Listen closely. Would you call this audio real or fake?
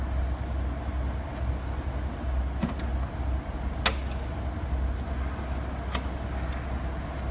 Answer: real